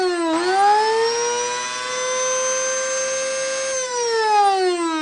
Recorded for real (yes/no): yes